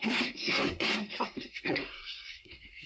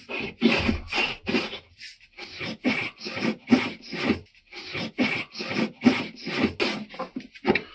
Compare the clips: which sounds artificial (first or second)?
first